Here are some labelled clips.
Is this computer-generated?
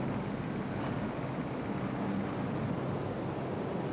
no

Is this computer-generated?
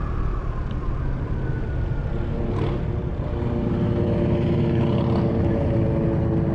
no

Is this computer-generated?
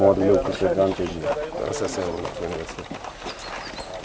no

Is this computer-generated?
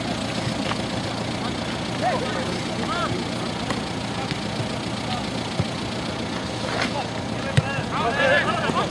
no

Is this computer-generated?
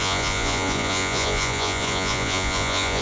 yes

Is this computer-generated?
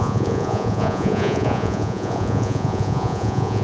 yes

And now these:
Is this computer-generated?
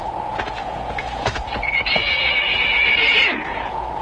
yes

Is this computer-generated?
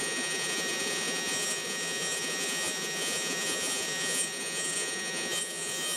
yes